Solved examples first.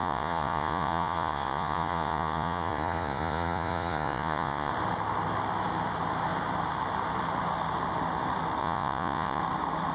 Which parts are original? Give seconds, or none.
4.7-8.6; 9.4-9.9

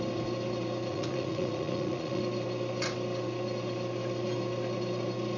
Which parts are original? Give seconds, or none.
0.0-0.9; 2.2-5.4